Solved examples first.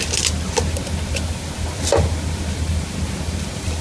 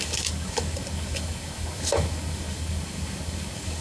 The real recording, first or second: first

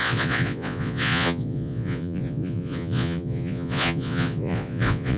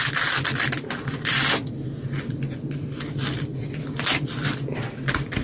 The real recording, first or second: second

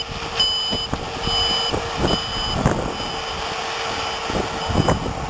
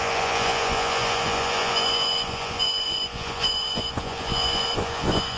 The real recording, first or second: first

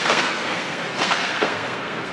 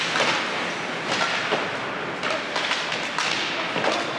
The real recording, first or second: second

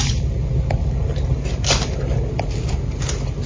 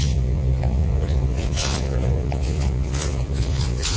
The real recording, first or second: first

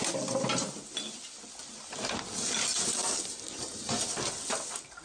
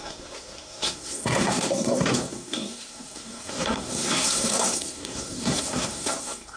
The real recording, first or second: first